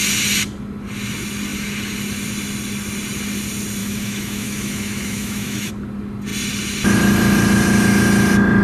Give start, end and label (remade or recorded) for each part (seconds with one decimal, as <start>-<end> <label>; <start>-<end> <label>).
0.0-3.8 recorded; 3.8-5.7 remade; 5.7-8.6 recorded